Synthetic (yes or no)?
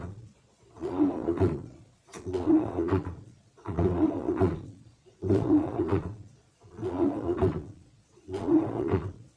yes